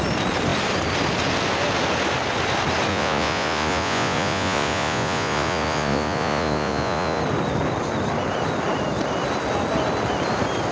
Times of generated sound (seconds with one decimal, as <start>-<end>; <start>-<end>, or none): 2.9-7.2